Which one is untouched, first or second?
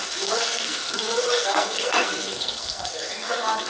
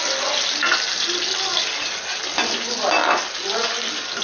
second